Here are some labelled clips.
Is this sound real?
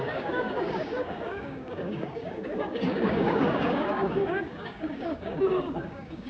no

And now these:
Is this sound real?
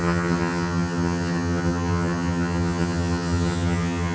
no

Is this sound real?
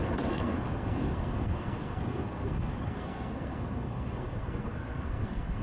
no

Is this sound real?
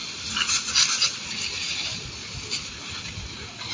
yes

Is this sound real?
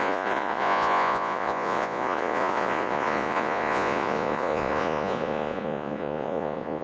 no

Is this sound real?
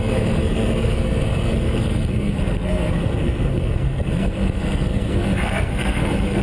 no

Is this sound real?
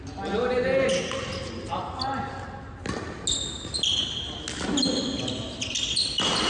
yes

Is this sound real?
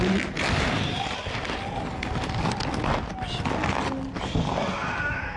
yes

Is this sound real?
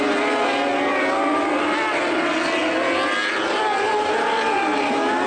yes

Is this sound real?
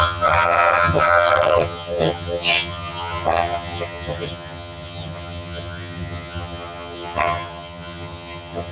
no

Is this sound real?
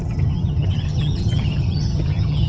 no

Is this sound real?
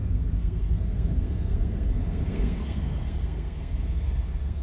no